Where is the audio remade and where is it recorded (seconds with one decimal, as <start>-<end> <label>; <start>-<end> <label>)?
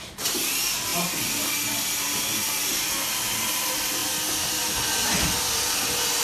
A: 0.0-6.2 recorded